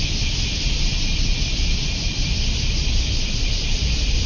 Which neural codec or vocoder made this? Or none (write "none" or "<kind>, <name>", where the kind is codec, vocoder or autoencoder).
vocoder, BigVGAN v2